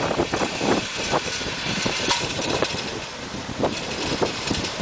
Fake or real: fake